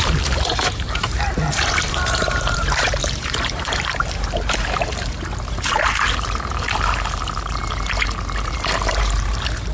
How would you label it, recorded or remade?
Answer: remade